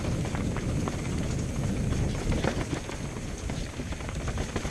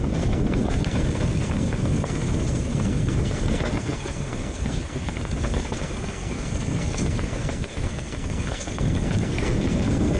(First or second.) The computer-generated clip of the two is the second